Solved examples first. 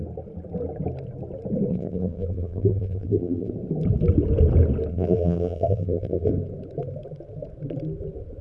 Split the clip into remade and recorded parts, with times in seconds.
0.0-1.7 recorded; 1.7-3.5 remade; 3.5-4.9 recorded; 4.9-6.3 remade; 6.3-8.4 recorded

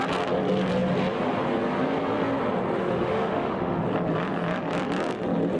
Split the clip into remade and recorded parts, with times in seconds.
0.0-2.8 recorded; 2.8-3.8 remade; 3.8-5.6 recorded

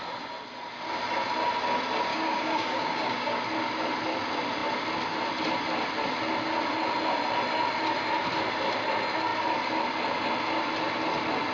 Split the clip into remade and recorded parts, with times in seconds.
0.0-2.1 recorded; 2.1-3.4 remade; 3.4-11.5 recorded

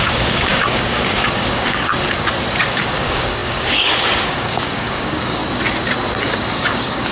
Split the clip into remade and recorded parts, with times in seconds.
0.0-1.9 remade; 1.9-2.6 recorded; 2.6-5.4 remade; 5.4-6.2 recorded; 6.2-7.1 remade

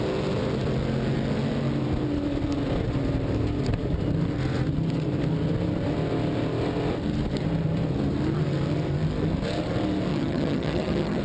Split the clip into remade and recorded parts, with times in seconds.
0.0-10.1 recorded; 10.1-11.2 remade

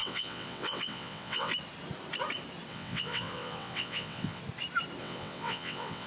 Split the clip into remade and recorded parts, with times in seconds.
0.0-1.5 remade; 1.5-2.7 recorded; 2.7-4.4 remade; 4.4-5.0 recorded; 5.0-6.1 remade

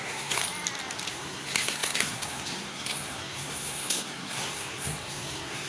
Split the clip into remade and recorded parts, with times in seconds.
0.0-0.4 remade; 0.4-1.1 recorded; 1.1-5.7 remade